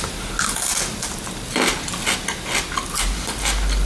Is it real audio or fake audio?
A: real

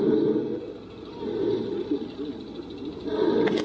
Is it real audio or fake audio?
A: real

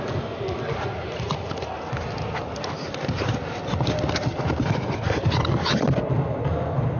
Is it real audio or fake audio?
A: real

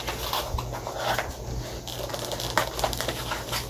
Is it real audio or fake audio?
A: real